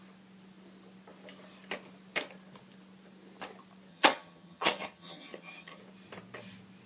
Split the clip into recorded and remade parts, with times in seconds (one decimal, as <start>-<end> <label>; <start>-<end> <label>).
0.0-3.9 recorded; 3.9-5.8 remade; 5.8-6.9 recorded